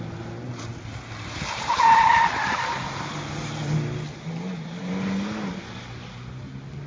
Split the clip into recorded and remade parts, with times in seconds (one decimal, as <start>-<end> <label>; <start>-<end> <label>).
0.0-6.9 recorded